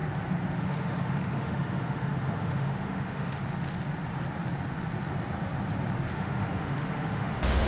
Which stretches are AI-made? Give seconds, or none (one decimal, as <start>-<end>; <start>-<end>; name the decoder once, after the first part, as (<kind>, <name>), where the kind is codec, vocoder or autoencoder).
0.6-3.4 (autoencoder, DAC-VAE); 6.1-7.7